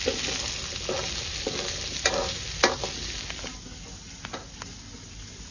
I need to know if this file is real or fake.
real